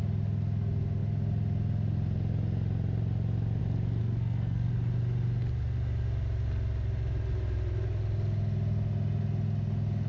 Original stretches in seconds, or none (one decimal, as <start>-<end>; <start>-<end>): 0.0-4.0; 4.7-10.1